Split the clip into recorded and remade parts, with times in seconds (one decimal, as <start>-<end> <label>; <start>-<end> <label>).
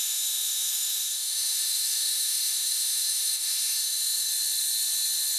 0.0-4.3 remade; 4.3-5.4 recorded